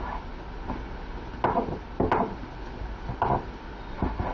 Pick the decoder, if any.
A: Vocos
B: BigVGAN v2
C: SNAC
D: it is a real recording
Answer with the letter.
D